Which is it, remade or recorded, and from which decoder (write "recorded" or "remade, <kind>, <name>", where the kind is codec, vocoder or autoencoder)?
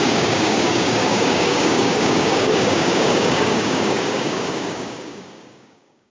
remade, codec, DAC